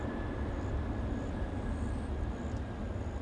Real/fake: real